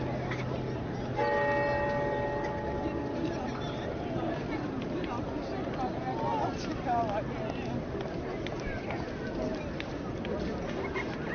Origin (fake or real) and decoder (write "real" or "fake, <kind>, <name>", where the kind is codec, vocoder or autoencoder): real